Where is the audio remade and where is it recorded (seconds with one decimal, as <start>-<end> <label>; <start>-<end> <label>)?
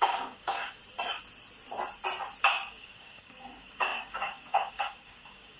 0.0-0.8 remade; 0.8-2.4 recorded; 2.4-5.6 remade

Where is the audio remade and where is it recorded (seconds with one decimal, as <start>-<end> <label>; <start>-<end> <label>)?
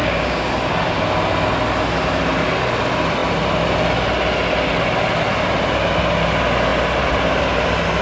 0.0-0.5 remade; 0.5-8.0 recorded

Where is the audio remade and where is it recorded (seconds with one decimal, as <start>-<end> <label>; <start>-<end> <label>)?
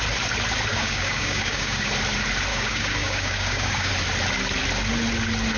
0.0-0.7 recorded; 0.7-1.9 remade; 1.9-2.5 recorded; 2.5-3.9 remade; 3.9-5.6 recorded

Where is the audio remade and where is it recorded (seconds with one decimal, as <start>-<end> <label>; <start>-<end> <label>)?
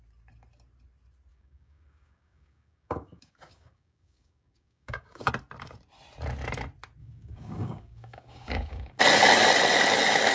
0.0-1.3 recorded; 1.3-5.3 remade; 5.3-7.0 recorded; 7.0-9.0 remade; 9.0-10.3 recorded